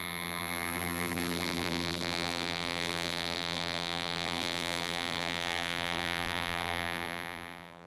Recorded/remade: remade